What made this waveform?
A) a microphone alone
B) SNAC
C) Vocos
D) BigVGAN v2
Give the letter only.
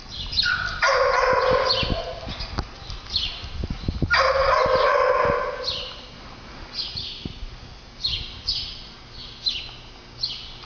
A